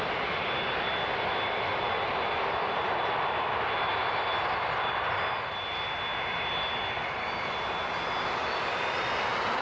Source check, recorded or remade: recorded